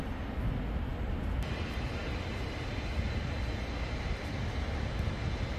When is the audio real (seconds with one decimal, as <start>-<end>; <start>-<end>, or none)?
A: 0.0-5.6